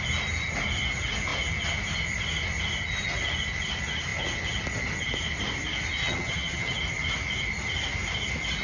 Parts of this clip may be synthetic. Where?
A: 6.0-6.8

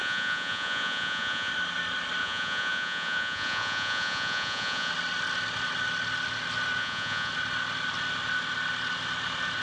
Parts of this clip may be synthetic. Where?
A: 0.0-1.5; 2.2-4.9; 6.8-7.3

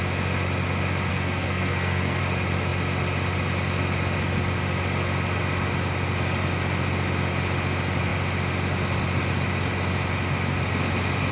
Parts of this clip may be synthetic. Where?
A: 1.1-2.2